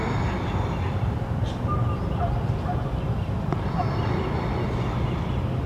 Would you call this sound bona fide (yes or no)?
yes